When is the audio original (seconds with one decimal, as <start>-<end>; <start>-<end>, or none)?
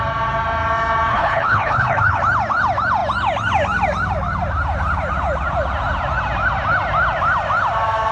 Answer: 0.0-1.1; 2.2-8.1